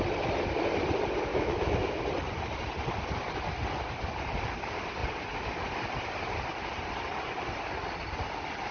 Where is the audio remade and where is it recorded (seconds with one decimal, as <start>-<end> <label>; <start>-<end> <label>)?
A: 0.0-1.3 recorded; 1.3-2.0 remade; 2.0-8.7 recorded